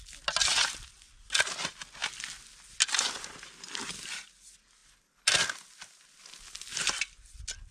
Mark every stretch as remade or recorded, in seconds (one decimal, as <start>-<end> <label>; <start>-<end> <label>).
0.0-7.7 recorded